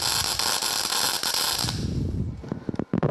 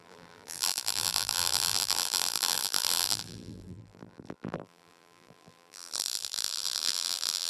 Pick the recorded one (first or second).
first